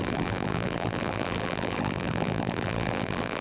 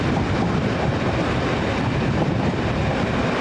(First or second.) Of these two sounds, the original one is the second